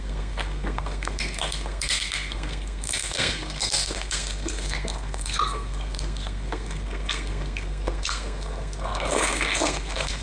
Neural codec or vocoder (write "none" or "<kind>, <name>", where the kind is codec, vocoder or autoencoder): codec, SNAC